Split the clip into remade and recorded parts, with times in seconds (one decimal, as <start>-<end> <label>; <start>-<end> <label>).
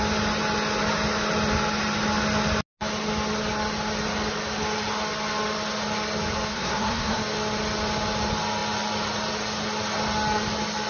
0.0-6.5 recorded; 6.5-7.2 remade; 7.2-10.9 recorded